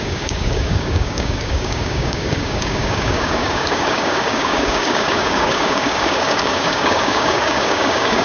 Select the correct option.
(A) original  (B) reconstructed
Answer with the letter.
B